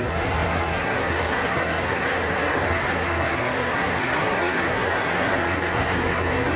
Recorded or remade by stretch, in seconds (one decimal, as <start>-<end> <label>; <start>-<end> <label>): 0.0-6.6 remade